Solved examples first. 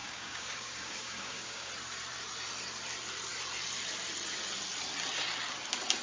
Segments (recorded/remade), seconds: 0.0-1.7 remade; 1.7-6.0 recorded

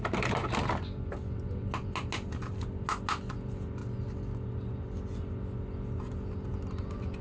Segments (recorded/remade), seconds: 0.0-0.4 remade; 0.4-3.3 recorded; 3.3-3.8 remade; 3.8-6.5 recorded; 6.5-7.2 remade

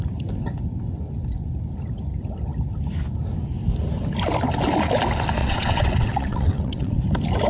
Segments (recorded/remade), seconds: 0.0-5.4 recorded; 5.4-7.0 remade; 7.0-7.5 recorded

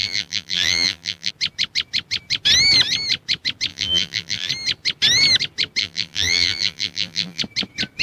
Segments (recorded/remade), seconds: 0.0-1.3 remade; 1.3-3.7 recorded; 3.7-4.5 remade; 4.5-5.8 recorded; 5.8-7.4 remade; 7.4-8.0 recorded

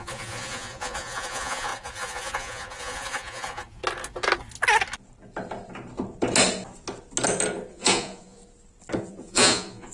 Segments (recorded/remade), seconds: 0.0-3.8 remade; 3.8-7.7 recorded; 7.7-8.4 remade; 8.4-9.0 recorded; 9.0-9.9 remade

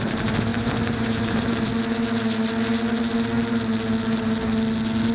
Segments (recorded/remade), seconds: 0.0-0.5 recorded; 0.5-1.7 remade; 1.7-5.1 recorded